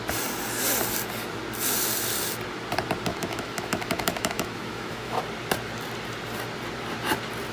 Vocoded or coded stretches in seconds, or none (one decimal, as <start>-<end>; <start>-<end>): 3.1-5.2